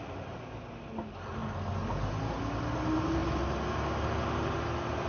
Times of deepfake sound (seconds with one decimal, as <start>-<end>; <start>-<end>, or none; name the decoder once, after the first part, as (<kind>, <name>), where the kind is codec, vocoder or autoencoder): none